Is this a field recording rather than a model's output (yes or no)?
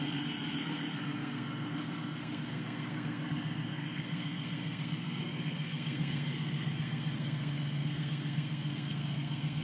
no